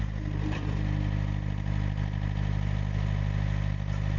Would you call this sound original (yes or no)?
yes